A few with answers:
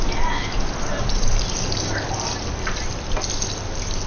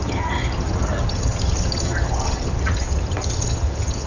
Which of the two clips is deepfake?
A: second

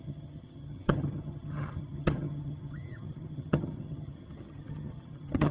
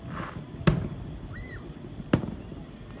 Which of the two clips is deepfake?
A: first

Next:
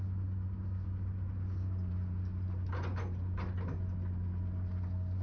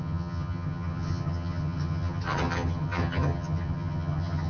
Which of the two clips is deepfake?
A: second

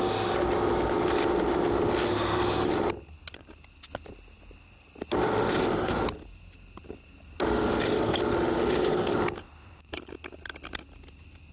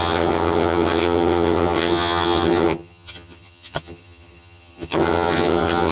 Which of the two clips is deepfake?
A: second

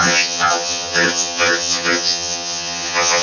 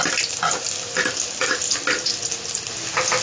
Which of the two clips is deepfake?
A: first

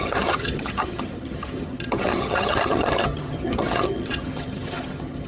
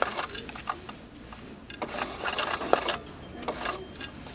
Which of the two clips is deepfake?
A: first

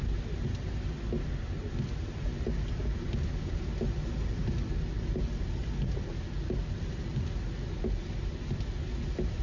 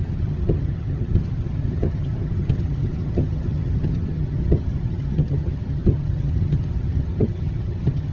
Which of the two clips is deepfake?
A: second